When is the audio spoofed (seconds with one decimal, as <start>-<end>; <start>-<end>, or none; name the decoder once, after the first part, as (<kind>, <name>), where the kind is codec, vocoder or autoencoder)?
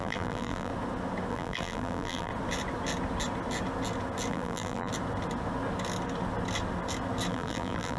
0.0-0.7 (vocoder, BigVGAN v2); 1.3-2.3; 4.3-4.9; 7.3-8.0